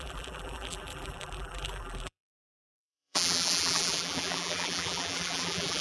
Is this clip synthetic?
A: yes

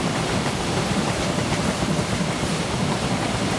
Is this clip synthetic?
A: yes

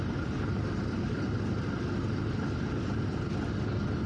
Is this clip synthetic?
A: no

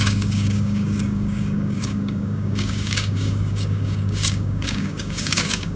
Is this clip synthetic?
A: yes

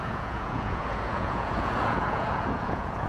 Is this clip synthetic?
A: yes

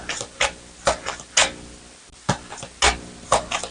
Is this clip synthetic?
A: no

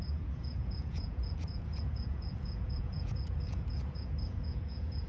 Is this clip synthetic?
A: yes